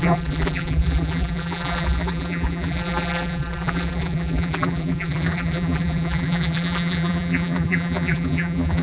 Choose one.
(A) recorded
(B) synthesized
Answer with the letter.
B